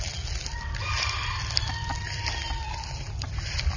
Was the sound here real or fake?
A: real